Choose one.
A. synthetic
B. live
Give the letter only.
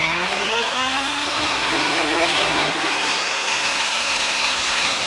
A